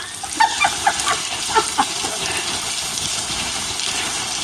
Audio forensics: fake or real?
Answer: real